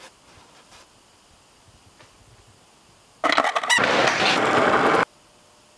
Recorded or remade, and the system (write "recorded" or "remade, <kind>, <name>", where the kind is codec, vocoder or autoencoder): recorded